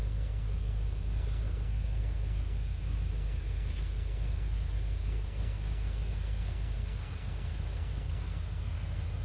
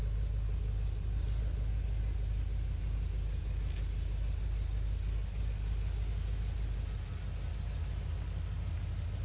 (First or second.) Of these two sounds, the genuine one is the second